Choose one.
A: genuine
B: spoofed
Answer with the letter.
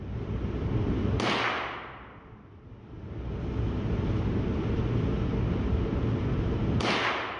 A